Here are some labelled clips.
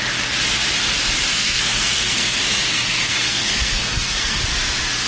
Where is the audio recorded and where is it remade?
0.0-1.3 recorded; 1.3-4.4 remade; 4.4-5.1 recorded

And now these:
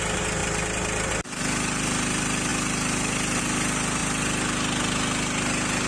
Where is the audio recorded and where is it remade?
0.0-5.9 recorded

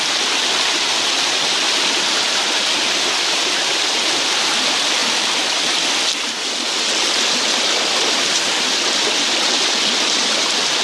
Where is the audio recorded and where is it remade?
0.0-5.0 recorded; 5.0-5.9 remade; 5.9-10.8 recorded

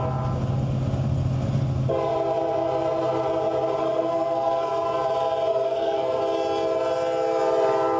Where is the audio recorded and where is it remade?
0.0-3.8 recorded; 3.8-4.7 remade; 4.7-5.5 recorded; 5.5-6.2 remade; 6.2-8.0 recorded

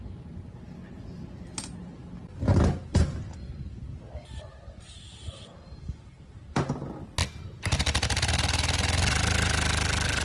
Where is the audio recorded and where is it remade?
0.0-10.2 recorded

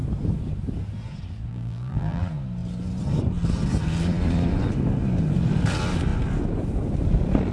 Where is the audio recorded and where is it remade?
0.0-1.5 recorded; 1.5-2.2 remade; 2.2-7.5 recorded